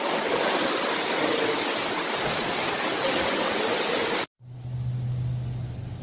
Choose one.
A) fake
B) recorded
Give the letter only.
B